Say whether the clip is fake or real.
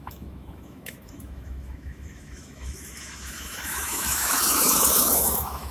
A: fake